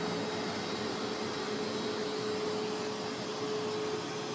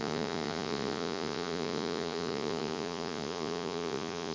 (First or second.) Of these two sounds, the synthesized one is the second